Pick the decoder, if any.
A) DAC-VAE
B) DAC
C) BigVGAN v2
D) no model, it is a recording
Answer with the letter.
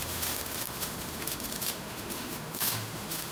A